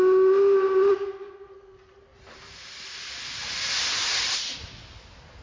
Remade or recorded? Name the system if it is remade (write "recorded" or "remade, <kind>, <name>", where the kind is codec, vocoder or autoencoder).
recorded